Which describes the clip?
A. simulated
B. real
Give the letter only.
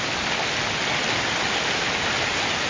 B